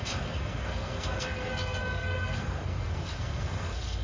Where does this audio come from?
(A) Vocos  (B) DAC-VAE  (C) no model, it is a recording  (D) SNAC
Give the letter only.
D